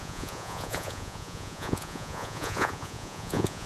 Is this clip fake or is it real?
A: fake